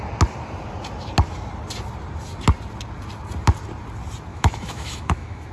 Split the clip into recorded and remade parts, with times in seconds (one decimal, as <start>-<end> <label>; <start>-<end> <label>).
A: 0.0-4.3 recorded; 4.3-5.5 remade